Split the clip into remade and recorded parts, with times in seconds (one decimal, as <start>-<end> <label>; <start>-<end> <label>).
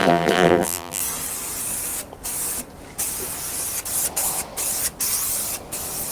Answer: 0.0-1.0 remade; 1.0-6.1 recorded